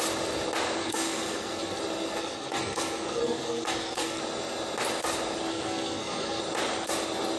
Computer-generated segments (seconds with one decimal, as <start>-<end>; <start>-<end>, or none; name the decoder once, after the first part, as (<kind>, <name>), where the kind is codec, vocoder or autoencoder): 0.8-1.8 (codec, SNAC); 2.2-4.2; 5.5-6.4